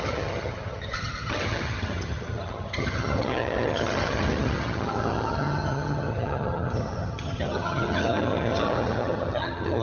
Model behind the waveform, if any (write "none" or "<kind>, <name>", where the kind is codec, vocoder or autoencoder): vocoder, HiFi-GAN